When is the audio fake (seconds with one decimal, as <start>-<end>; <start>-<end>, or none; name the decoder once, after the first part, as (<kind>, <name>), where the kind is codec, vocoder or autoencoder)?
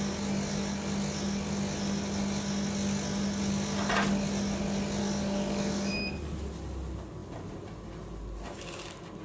5.0-5.9 (codec, DAC)